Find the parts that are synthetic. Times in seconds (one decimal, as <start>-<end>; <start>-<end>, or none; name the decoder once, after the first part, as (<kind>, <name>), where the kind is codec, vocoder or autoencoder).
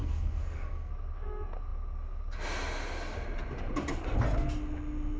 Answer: 0.0-0.9 (codec, SNAC)